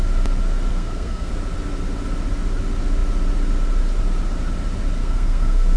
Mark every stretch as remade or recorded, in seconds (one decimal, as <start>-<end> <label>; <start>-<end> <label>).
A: 0.0-0.7 recorded; 0.7-1.3 remade; 1.3-5.0 recorded; 5.0-5.8 remade